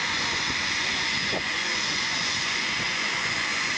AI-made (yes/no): yes